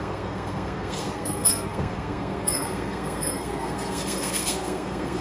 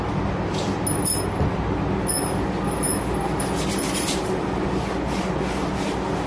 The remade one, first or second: first